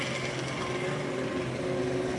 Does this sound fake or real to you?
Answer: real